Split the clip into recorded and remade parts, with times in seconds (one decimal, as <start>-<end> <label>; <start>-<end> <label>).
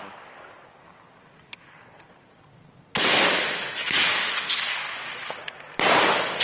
0.0-3.3 recorded; 3.3-4.6 remade; 4.6-6.4 recorded